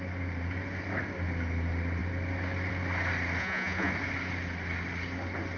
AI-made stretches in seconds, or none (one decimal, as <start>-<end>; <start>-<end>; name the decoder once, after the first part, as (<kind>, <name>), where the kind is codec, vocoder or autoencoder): 3.4-3.9 (vocoder, Vocos)